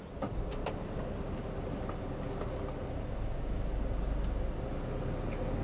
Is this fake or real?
real